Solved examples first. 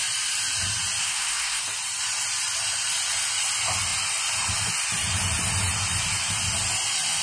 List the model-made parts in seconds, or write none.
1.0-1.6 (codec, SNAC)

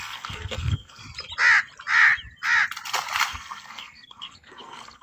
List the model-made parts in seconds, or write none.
0.0-1.0 (codec, SNAC); 3.3-5.0

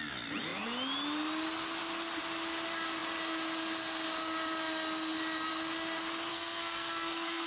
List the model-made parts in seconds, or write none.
6.3-7.5 (codec, SNAC)

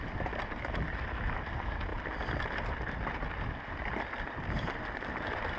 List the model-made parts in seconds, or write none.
none

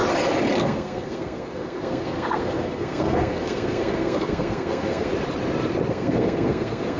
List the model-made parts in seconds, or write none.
0.6-5.1 (codec, SNAC); 5.9-7.0

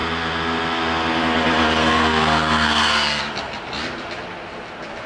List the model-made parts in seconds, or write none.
1.8-3.2 (codec, SNAC)

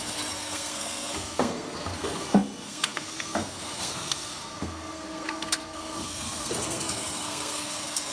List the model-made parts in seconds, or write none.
0.0-8.1 (codec, SNAC)

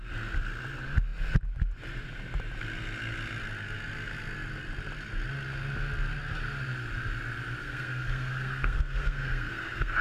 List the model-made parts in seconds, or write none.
7.6-10.0 (codec, SNAC)